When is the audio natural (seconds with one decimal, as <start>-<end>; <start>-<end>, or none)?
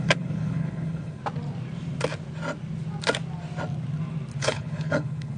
1.2-4.4